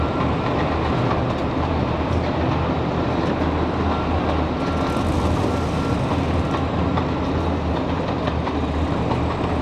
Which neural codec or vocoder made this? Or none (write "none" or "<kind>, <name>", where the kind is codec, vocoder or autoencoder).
none